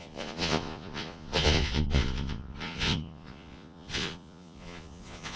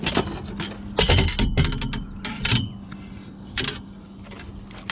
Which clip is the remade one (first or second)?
first